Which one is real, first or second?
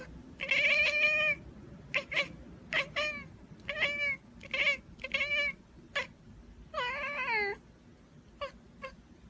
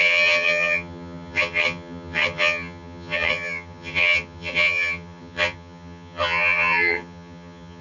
first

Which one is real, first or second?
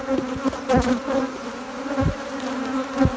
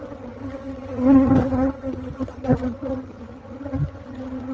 first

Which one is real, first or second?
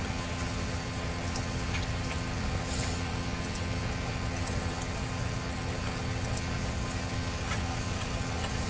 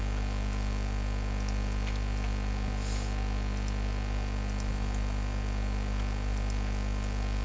second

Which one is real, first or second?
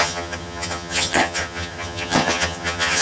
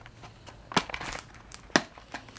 second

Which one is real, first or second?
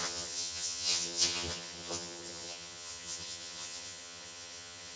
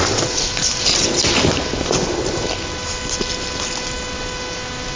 second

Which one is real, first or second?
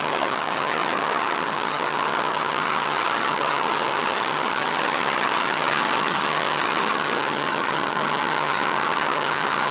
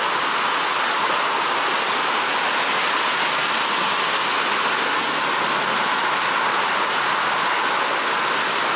second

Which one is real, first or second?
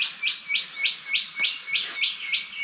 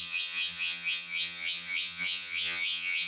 first